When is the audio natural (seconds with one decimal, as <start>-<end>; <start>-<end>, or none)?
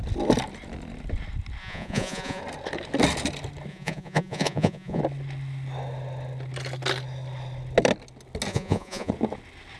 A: 0.0-1.6; 2.4-3.7; 5.0-8.5; 9.1-9.8